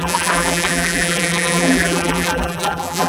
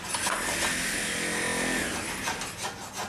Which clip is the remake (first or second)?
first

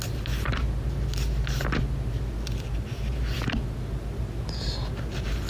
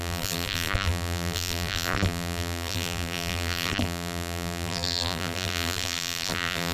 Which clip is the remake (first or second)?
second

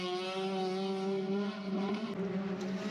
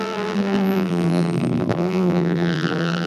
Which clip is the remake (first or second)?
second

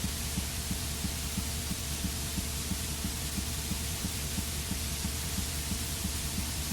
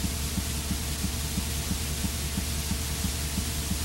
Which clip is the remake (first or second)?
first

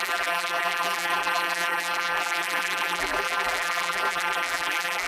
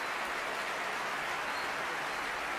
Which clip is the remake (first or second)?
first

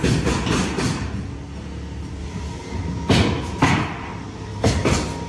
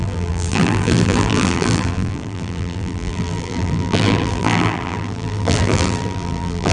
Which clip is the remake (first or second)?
second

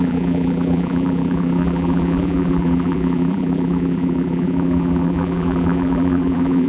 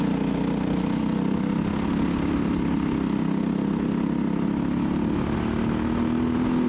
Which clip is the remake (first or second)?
first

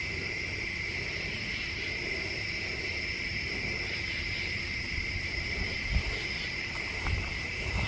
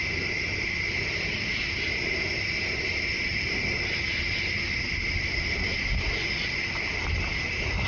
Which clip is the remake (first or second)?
first